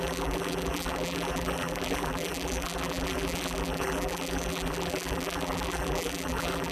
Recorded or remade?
remade